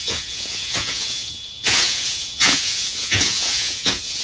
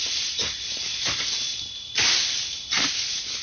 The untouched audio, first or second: second